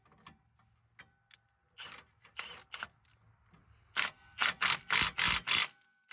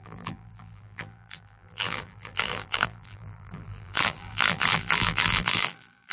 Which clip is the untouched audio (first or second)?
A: first